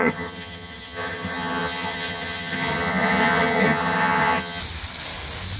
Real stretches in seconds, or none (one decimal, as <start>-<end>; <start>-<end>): 4.6-5.6